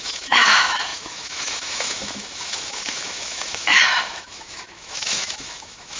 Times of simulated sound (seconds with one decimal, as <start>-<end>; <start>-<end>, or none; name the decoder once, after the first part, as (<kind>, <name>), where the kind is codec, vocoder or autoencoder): 0.0-6.0 (autoencoder, DAC-VAE)